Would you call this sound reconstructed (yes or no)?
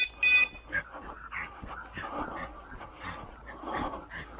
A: no